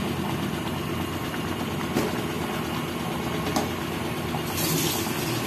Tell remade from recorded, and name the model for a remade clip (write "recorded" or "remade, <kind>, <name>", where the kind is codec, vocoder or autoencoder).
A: recorded